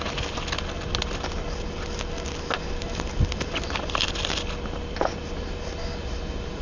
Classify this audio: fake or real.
real